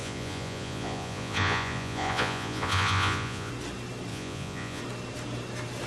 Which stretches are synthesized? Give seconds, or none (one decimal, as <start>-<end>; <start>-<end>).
0.0-3.5; 4.1-4.8